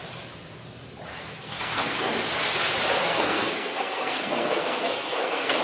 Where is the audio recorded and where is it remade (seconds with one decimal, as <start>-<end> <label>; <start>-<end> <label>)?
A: 0.0-1.1 recorded; 1.1-2.1 remade; 2.1-3.0 recorded; 3.0-5.6 remade